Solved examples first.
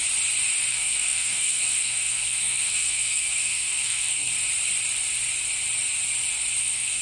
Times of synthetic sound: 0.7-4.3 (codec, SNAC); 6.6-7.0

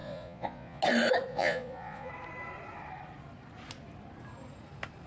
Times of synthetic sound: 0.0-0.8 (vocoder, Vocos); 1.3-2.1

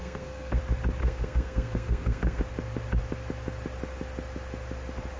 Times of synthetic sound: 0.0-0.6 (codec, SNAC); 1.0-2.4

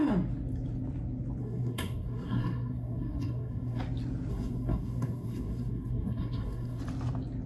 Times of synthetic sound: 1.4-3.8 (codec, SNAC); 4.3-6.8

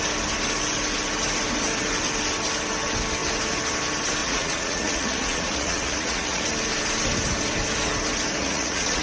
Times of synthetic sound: 4.2-6.4 (vocoder, Vocos); 8.4-9.0

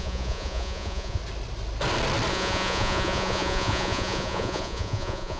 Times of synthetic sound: 0.0-1.2 (vocoder, Vocos); 2.3-5.4